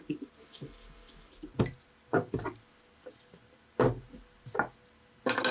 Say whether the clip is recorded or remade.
recorded